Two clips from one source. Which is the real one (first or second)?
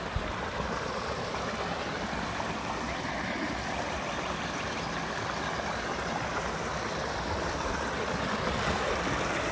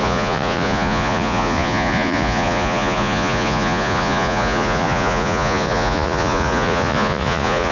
first